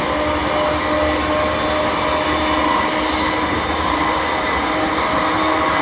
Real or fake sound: real